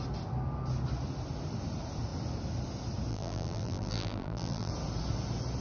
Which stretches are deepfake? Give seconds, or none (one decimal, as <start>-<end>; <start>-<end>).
3.1-4.7